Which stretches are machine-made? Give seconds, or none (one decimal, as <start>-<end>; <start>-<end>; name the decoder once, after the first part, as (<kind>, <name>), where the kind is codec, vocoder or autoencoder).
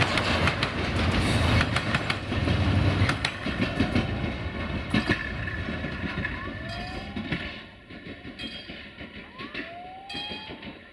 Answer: none